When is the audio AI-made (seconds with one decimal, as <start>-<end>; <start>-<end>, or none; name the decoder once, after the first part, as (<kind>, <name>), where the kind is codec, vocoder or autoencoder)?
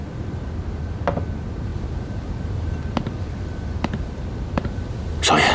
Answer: none